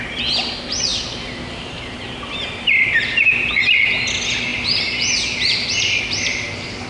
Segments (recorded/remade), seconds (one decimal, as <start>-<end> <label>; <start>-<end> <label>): 0.0-0.9 recorded; 0.9-2.9 remade; 2.9-6.9 recorded